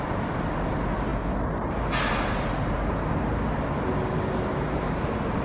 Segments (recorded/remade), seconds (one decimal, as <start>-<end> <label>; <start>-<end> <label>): 0.0-5.4 recorded